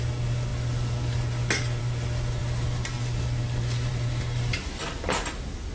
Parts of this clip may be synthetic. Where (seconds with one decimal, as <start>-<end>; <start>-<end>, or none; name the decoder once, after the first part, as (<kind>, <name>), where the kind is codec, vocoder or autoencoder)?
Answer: none